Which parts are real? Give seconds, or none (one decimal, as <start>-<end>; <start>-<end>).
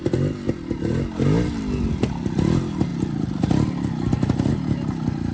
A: 0.0-5.3